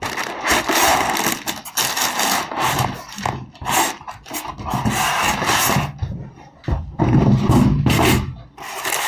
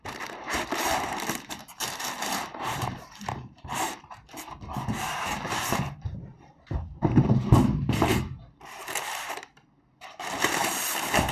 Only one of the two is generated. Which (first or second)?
second